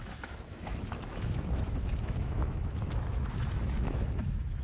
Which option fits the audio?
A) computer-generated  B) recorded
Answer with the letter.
A